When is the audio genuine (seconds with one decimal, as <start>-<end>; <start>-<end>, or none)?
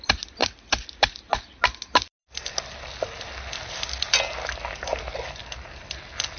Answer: 0.0-6.4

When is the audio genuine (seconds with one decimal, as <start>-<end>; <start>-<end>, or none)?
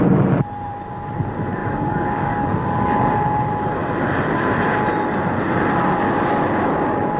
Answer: 0.0-1.6; 3.1-7.2